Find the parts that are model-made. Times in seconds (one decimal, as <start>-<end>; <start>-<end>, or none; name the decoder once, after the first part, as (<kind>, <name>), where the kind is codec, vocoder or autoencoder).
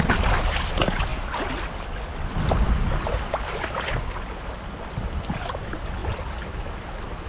none